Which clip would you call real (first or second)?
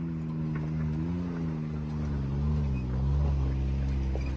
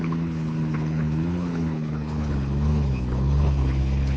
first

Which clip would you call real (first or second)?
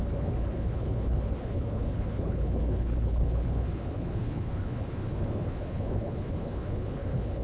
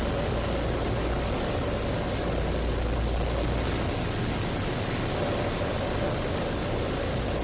second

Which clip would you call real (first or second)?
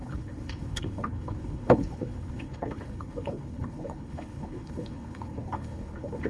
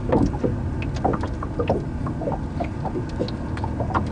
second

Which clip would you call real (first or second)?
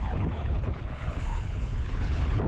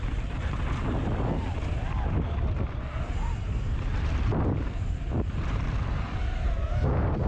second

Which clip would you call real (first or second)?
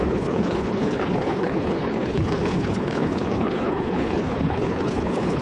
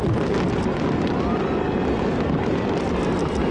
second